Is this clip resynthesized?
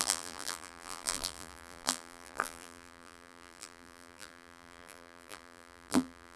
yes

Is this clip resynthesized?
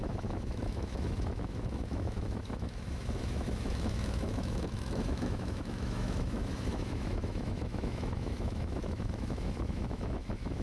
yes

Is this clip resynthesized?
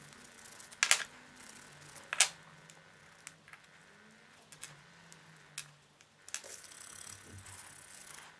no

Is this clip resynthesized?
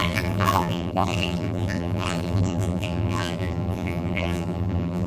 yes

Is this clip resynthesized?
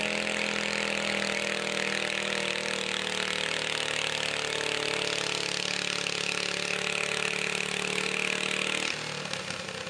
no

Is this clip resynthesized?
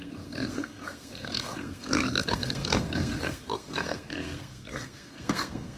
yes